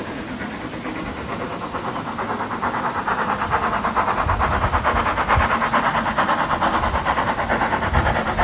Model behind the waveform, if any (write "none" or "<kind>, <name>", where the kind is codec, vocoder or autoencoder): none